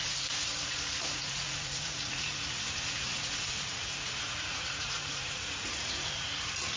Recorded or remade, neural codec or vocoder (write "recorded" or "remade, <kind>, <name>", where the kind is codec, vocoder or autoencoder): remade, vocoder, Vocos